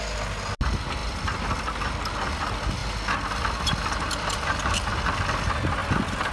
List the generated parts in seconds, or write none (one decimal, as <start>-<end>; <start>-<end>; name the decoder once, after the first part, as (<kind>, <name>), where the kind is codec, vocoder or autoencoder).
1.0-1.9 (vocoder, BigVGAN v2); 2.8-4.5; 5.8-6.3